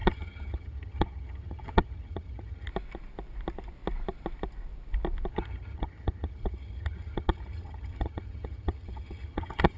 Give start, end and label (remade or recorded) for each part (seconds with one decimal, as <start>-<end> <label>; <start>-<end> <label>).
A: 0.0-2.7 remade; 2.7-5.3 recorded; 5.3-9.8 remade